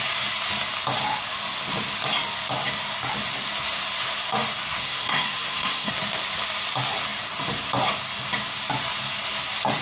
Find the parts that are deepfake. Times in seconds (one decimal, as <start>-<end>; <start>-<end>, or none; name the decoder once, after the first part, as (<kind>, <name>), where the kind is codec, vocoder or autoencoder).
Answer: 4.8-5.9 (codec, SNAC)